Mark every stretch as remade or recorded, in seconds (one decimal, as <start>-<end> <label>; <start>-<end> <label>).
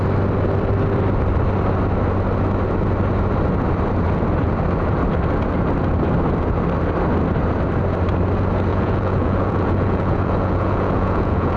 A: 0.0-8.7 recorded; 8.7-11.6 remade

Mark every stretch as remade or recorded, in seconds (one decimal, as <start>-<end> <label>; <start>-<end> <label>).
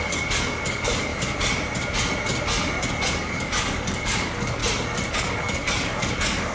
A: 0.0-1.1 remade; 1.1-3.1 recorded; 3.1-4.6 remade; 4.6-5.1 recorded; 5.1-6.5 remade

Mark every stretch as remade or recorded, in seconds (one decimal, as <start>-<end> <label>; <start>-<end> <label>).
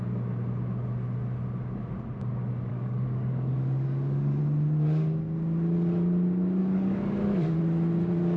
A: 0.0-2.7 recorded; 2.7-4.4 remade; 4.4-6.6 recorded; 6.6-7.6 remade; 7.6-8.4 recorded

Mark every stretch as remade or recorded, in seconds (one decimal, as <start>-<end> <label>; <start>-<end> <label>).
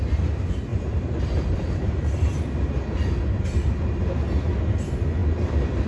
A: 0.0-0.7 recorded; 0.7-4.1 remade; 4.1-5.2 recorded; 5.2-5.9 remade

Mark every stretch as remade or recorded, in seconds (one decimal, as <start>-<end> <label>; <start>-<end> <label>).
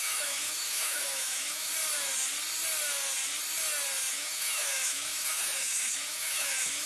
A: 0.0-1.7 remade; 1.7-4.1 recorded; 4.1-6.9 remade